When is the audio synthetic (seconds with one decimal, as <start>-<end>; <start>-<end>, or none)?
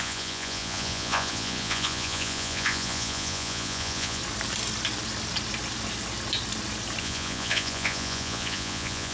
0.0-4.2; 7.0-9.1